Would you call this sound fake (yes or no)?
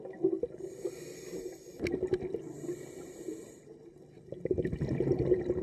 no